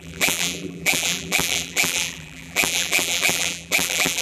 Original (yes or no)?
no